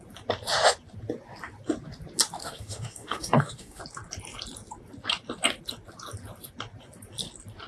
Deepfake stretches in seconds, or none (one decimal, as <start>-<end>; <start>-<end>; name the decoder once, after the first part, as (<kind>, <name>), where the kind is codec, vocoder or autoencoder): 2.4-3.8 (autoencoder, DAC-VAE)